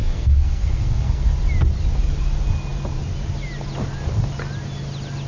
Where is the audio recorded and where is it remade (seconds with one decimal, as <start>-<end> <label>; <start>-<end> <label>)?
0.0-1.3 remade; 1.3-5.3 recorded